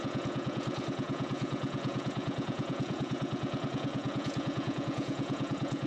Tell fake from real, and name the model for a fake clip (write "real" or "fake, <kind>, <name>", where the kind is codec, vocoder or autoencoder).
fake, vocoder, Vocos